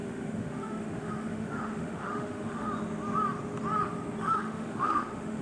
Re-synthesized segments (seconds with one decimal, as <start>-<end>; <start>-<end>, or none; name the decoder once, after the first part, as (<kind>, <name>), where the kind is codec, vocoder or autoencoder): 0.0-2.7 (autoencoder, DAC-VAE); 4.2-5.4